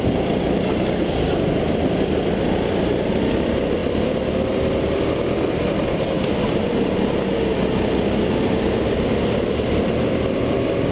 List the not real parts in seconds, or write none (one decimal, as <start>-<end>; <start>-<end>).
none